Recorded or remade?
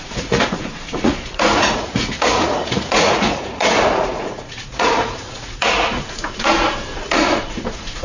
remade